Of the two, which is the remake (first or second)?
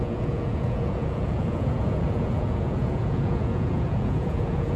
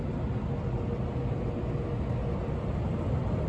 first